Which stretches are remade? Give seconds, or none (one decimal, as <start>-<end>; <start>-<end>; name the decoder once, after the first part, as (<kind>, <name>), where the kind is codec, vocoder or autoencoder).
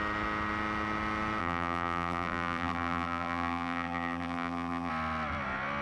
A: 1.4-4.9 (vocoder, BigVGAN v2)